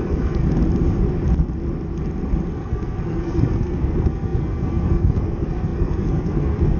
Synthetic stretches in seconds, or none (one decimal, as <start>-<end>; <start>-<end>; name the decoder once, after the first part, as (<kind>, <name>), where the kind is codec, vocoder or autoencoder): 0.0-0.4 (codec, SNAC); 2.5-6.8